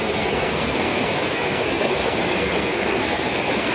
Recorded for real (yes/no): no